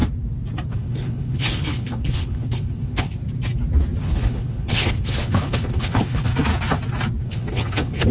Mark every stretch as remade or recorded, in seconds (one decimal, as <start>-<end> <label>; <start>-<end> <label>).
0.0-0.7 recorded; 0.7-3.2 remade; 3.2-4.0 recorded; 4.0-6.3 remade; 6.3-7.2 recorded; 7.2-8.1 remade